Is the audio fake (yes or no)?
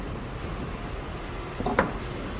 no